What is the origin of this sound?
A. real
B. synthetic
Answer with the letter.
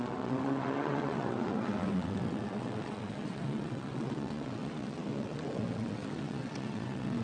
B